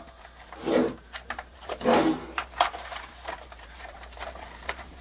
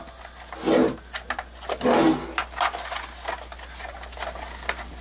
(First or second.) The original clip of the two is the second